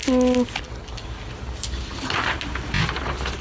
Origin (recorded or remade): recorded